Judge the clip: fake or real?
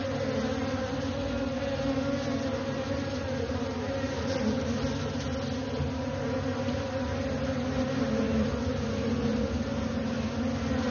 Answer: real